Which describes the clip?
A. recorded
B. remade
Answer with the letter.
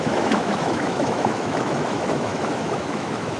B